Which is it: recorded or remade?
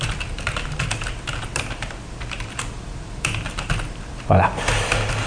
recorded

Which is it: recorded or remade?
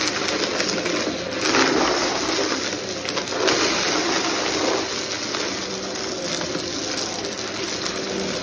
recorded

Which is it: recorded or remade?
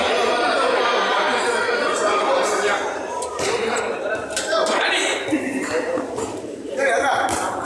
remade